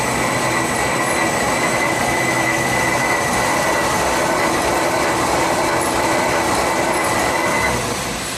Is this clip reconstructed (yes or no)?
no